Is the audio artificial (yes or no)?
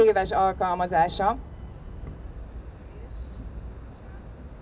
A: no